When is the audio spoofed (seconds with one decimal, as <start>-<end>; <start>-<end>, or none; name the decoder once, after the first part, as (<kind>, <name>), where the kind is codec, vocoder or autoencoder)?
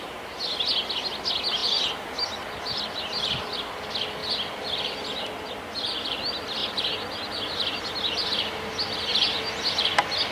none